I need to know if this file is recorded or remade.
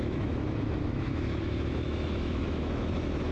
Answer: remade